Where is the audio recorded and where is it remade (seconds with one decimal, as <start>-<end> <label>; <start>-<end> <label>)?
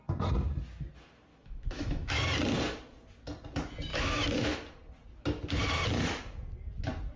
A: 0.0-1.3 recorded; 1.3-2.2 remade; 2.2-3.9 recorded; 3.9-4.5 remade; 4.5-7.2 recorded